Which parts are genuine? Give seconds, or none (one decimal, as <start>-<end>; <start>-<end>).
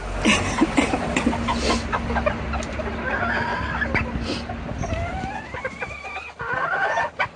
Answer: 0.0-3.5; 5.4-7.4